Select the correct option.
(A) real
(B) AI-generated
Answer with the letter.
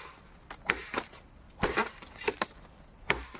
A